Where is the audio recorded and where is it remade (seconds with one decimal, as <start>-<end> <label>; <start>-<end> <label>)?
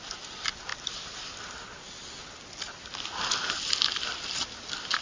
0.0-5.0 recorded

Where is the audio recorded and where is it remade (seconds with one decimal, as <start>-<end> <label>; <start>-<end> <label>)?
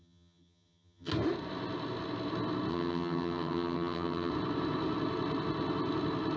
0.0-1.1 remade; 1.1-2.7 recorded; 2.7-4.3 remade; 4.3-6.4 recorded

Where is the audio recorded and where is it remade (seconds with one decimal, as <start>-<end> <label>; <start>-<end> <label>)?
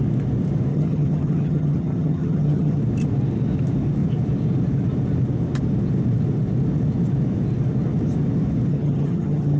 0.0-0.7 recorded; 0.7-2.8 remade; 2.8-8.7 recorded; 8.7-9.6 remade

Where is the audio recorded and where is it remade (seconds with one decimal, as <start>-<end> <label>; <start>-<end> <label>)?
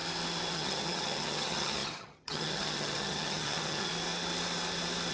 0.0-0.5 recorded; 0.5-3.9 remade; 3.9-5.1 recorded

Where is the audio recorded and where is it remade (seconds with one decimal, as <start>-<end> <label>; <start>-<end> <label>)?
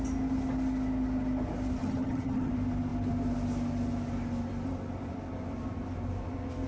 0.0-1.8 recorded; 1.8-2.5 remade; 2.5-6.7 recorded